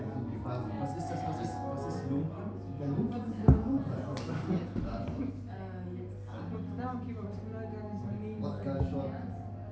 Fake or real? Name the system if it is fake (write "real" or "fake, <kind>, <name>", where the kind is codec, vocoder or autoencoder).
real